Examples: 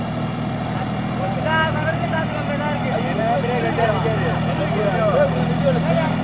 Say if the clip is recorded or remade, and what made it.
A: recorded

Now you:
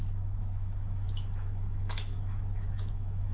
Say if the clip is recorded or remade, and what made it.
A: remade, autoencoder, DAC-VAE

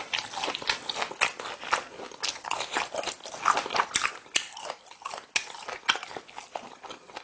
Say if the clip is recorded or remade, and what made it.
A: recorded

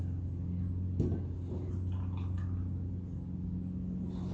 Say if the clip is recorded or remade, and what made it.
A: recorded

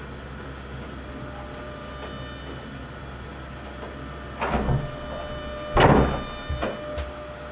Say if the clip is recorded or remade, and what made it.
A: recorded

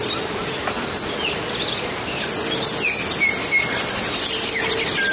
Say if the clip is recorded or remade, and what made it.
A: recorded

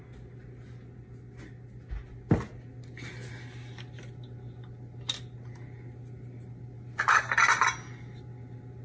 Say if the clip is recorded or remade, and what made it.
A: recorded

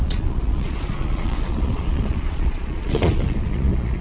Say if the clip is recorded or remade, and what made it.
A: remade, vocoder, Vocos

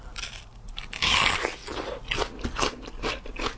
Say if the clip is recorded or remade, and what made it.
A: recorded